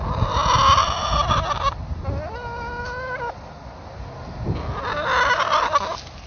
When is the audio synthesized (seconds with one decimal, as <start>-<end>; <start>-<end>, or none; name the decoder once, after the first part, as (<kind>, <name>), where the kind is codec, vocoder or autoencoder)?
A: none